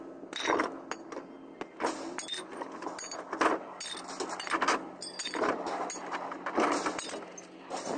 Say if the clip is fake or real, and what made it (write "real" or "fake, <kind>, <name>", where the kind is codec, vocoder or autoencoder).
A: real